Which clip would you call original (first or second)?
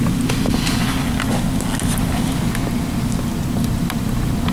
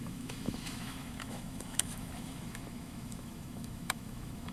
first